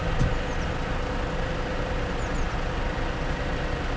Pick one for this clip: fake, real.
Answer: real